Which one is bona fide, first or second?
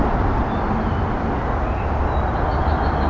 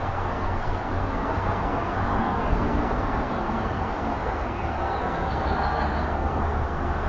first